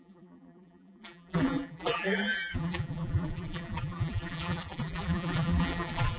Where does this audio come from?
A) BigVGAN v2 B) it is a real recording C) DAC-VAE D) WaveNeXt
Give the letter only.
A